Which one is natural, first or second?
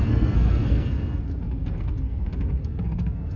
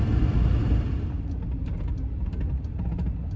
second